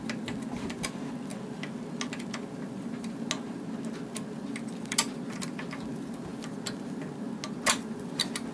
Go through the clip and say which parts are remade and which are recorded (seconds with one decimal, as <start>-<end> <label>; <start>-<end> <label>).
0.0-8.5 recorded